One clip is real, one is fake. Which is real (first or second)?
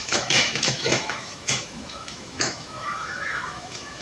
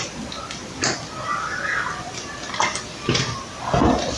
second